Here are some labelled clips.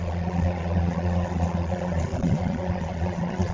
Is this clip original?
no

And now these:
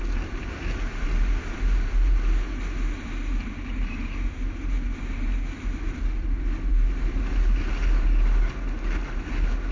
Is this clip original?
yes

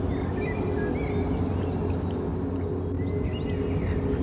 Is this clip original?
yes